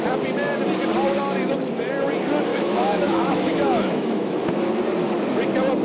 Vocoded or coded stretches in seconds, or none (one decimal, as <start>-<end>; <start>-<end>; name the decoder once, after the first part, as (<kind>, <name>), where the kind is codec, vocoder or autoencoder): 2.5-4.8 (autoencoder, DAC-VAE)